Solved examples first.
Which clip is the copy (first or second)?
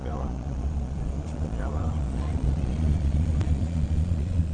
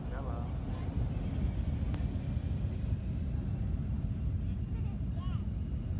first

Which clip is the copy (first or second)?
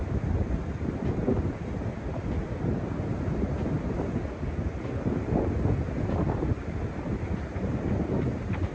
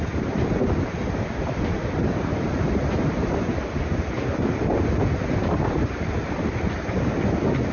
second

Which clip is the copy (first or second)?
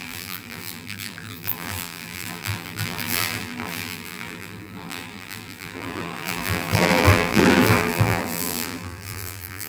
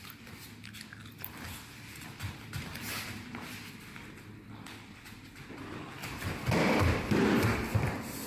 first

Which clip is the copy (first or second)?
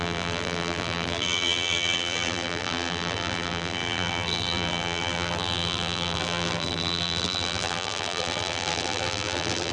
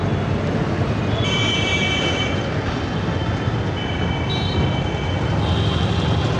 first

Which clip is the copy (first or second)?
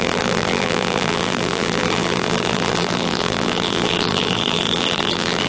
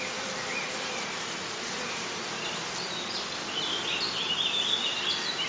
first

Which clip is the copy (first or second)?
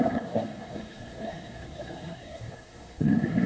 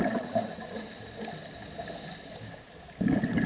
first